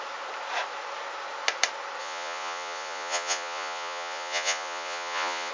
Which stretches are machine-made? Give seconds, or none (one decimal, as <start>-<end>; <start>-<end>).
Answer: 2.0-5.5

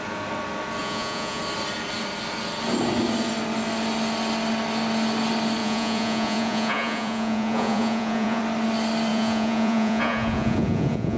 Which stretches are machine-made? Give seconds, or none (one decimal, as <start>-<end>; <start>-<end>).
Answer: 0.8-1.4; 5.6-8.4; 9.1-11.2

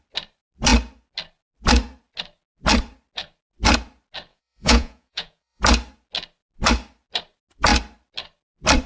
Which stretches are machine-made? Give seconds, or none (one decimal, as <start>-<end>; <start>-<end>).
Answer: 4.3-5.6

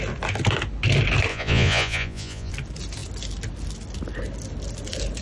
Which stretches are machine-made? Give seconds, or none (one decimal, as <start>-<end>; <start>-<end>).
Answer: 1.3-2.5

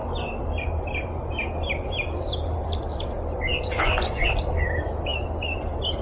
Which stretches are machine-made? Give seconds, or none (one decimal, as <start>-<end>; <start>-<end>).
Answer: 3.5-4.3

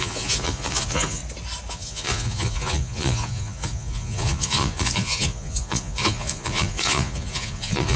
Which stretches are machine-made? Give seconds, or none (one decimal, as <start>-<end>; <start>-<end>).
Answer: 0.0-1.2; 1.7-8.0